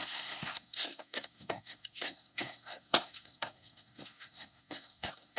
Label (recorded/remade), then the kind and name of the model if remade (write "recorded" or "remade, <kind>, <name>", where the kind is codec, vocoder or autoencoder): remade, codec, SNAC